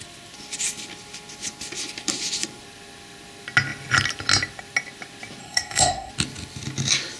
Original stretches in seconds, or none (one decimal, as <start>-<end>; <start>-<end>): 0.0-5.4; 6.1-7.2